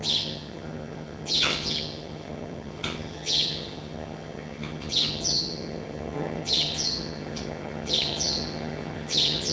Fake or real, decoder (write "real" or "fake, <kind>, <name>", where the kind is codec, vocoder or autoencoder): fake, vocoder, HiFi-GAN